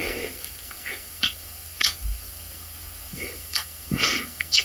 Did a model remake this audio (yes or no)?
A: yes